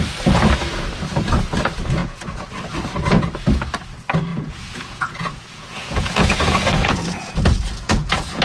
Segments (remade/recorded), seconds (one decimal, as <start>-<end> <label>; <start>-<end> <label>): 0.0-2.0 recorded; 2.0-2.5 remade; 2.5-4.3 recorded; 4.3-8.4 remade